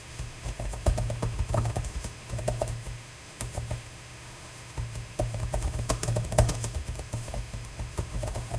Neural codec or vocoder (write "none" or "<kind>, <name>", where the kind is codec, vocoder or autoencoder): autoencoder, DAC-VAE